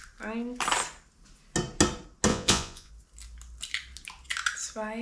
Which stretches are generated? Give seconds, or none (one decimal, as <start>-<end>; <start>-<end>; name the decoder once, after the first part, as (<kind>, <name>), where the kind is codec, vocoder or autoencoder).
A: 2.3-2.9 (vocoder, Vocos)

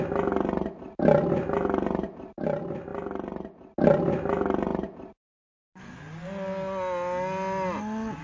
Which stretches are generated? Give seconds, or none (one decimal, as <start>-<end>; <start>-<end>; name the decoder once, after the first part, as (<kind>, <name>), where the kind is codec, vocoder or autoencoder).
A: none

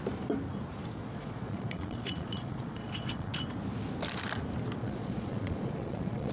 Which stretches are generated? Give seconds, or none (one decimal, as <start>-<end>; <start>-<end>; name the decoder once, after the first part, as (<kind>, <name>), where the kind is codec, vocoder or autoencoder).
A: 1.0-3.3 (vocoder, Vocos); 4.8-6.3

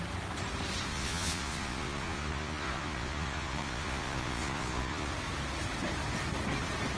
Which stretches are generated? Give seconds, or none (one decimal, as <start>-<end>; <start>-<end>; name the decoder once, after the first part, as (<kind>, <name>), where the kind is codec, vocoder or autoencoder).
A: 0.9-5.1 (vocoder, Vocos)

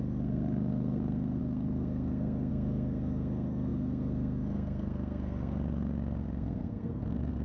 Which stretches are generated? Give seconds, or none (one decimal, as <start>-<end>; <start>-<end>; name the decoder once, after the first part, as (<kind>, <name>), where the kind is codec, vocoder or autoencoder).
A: 0.0-7.4 (codec, SNAC)

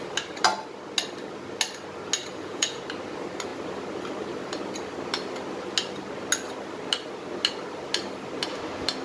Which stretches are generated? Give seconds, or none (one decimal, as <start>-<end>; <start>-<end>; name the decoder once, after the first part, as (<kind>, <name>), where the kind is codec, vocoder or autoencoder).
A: 2.3-2.8 (vocoder, Vocos)

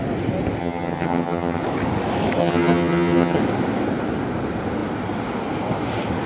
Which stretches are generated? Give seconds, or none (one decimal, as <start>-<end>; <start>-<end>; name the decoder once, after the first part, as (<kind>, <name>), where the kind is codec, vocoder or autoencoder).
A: 0.6-1.6 (vocoder, HiFi-GAN); 2.4-3.4